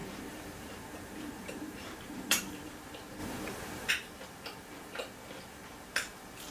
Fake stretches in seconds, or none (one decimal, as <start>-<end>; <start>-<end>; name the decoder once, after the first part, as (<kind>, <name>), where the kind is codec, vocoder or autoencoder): 0.0-2.7 (vocoder, BigVGAN v2); 3.2-3.9